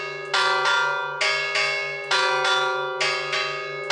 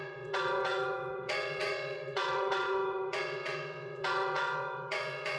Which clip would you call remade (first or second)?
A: second